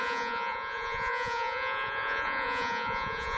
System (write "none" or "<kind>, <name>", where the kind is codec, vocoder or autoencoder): vocoder, Vocos